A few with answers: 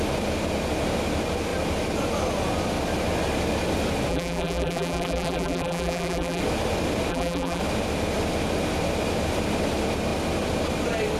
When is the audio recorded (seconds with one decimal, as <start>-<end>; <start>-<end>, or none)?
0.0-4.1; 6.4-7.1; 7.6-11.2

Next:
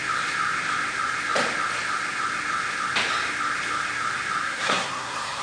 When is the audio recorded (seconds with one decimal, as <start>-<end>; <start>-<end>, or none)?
0.0-4.4

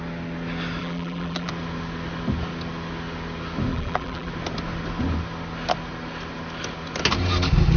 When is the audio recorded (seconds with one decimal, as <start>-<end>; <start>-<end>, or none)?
0.0-0.8; 1.5-3.7; 4.3-7.8

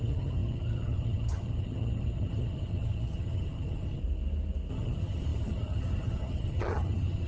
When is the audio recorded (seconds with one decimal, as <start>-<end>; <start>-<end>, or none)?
4.0-4.7

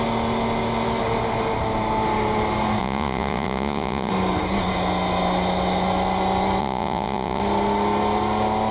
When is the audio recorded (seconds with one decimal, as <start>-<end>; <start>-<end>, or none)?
0.0-2.8; 4.1-6.6; 7.4-8.7

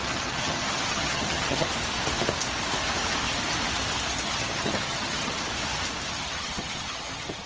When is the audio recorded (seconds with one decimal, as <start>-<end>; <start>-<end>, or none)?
1.7-4.2; 5.5-6.1

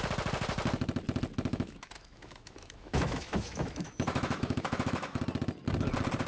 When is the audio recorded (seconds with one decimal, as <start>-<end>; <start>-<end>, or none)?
0.0-1.5; 5.2-6.3